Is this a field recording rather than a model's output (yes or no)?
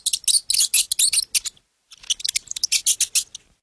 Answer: yes